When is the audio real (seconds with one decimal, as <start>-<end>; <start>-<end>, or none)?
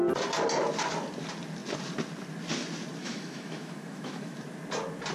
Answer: 0.0-3.0; 4.4-5.1